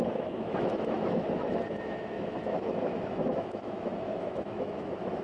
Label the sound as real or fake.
fake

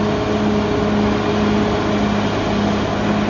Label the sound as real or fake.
real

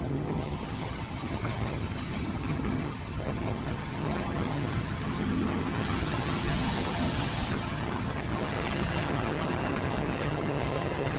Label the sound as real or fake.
fake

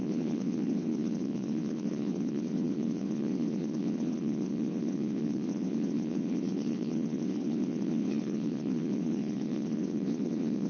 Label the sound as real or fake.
fake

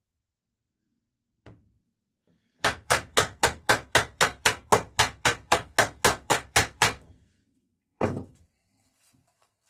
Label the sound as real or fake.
fake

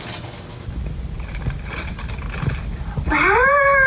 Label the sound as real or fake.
real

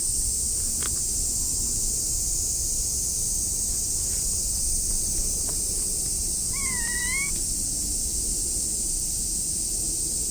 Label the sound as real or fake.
fake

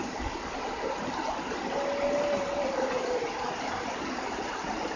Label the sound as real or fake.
real